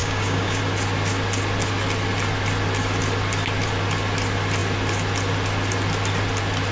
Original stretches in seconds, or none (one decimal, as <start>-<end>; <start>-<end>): 0.6-6.7

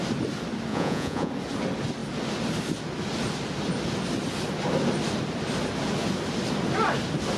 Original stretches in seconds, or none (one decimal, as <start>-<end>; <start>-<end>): 0.0-0.7; 1.3-7.4